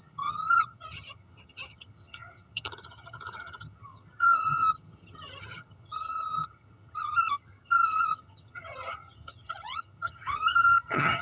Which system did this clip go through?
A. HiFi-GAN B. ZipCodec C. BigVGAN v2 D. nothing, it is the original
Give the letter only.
A